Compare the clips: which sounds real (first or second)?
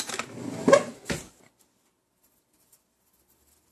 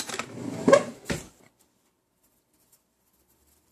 first